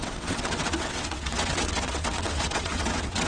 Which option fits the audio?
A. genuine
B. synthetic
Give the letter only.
B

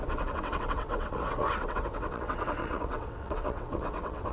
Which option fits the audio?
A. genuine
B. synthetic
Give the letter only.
B